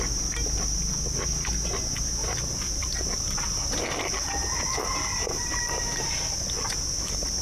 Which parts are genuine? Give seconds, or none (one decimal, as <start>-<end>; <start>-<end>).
0.0-2.2; 4.3-5.1; 6.0-7.4